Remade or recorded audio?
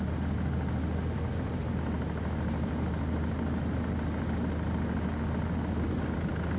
recorded